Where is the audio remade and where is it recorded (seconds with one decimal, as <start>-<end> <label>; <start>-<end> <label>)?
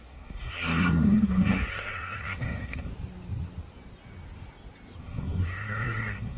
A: 0.0-2.9 remade; 2.9-5.0 recorded; 5.0-6.4 remade